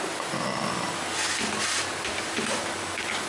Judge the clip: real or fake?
real